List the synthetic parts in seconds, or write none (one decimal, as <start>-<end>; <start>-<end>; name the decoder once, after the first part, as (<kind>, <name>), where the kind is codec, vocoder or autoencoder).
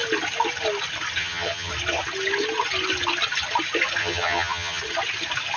1.2-1.7 (vocoder, HiFi-GAN); 4.0-4.8